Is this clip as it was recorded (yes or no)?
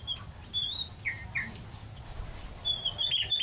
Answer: yes